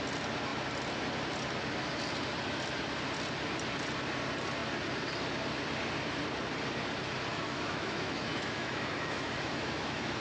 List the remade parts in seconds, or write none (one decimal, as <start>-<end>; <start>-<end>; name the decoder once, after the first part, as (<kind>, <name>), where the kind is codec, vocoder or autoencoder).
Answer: 7.3-10.2 (autoencoder, DAC-VAE)